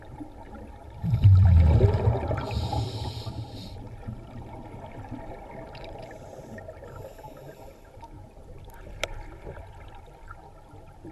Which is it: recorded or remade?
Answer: remade